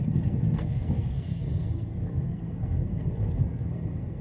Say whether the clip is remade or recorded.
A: remade